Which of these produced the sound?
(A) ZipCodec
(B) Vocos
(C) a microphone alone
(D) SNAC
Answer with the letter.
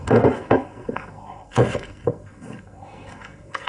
D